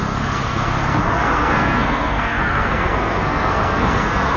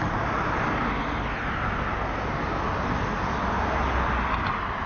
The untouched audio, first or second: second